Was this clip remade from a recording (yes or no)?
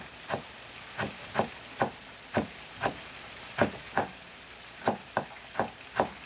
no